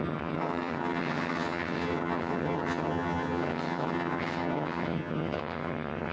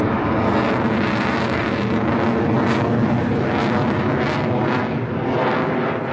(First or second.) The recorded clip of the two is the second